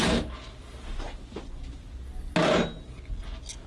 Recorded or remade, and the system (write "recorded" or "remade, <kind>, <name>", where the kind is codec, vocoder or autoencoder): recorded